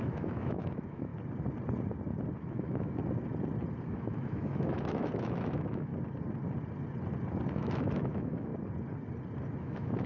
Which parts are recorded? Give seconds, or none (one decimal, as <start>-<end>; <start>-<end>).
1.1-2.4; 3.0-3.8; 5.9-7.5; 8.5-9.6